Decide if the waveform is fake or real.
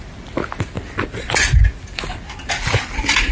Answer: real